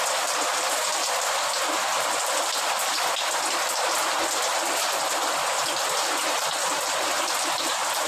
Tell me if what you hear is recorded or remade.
remade